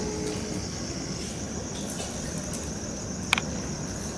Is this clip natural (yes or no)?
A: yes